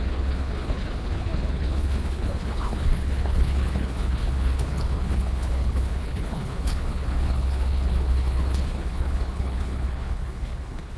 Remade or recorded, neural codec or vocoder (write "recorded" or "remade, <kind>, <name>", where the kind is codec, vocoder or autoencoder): remade, codec, HILCodec